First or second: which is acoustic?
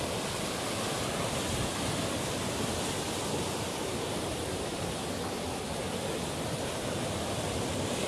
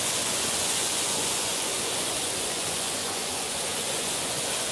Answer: first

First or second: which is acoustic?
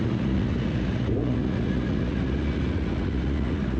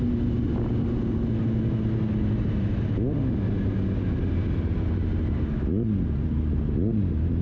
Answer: second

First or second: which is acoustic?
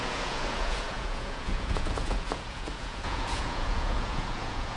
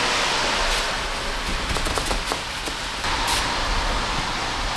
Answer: second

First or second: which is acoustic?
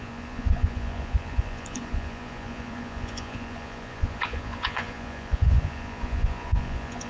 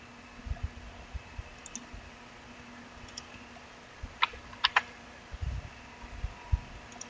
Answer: second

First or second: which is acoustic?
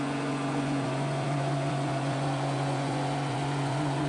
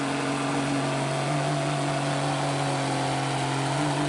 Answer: second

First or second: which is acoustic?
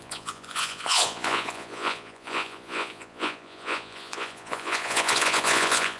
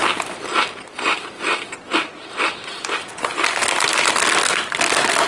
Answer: second